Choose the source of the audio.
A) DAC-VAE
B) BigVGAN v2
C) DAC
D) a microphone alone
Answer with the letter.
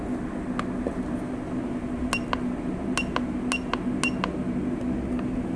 D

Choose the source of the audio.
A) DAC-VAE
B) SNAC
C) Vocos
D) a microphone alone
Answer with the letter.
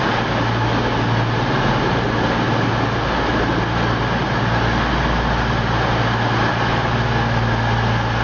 D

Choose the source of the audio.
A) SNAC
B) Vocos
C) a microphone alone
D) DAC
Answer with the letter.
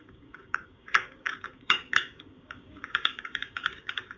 D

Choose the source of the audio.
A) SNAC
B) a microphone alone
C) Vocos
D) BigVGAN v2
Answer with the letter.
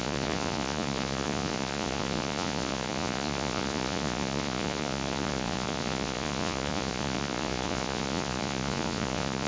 C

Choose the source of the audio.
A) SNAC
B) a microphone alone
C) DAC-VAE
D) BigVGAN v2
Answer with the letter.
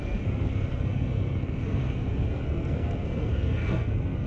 A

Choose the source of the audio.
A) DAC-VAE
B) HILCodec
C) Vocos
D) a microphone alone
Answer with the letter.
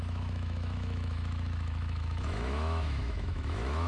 A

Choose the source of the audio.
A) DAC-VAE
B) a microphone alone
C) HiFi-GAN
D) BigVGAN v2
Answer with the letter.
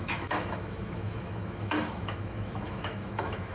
A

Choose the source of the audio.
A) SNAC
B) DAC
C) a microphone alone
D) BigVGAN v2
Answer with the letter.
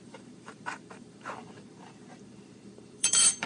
D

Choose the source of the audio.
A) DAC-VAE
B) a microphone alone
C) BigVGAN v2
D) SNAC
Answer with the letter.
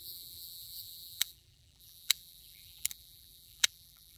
C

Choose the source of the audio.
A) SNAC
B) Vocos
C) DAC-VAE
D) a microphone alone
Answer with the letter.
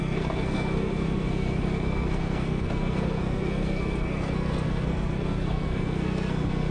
A